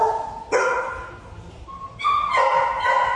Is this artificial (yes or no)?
no